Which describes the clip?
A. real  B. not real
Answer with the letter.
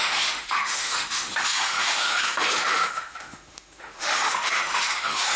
B